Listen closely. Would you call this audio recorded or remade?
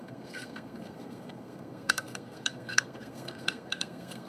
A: remade